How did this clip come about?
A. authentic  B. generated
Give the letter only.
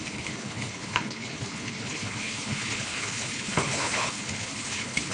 B